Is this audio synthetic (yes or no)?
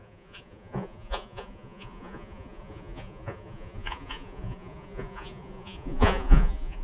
yes